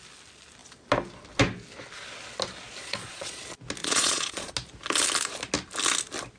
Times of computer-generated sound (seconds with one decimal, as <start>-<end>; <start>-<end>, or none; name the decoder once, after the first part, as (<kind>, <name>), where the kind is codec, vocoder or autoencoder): 2.8-3.4 (vocoder, Vocos); 3.8-4.5